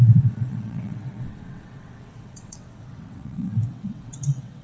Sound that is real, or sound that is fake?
fake